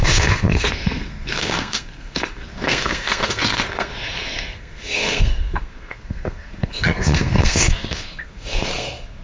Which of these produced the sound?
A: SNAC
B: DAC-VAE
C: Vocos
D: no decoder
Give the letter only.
A